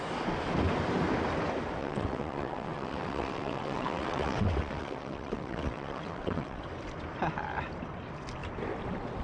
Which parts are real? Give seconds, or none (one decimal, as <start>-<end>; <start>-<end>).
0.0-1.8; 6.6-9.2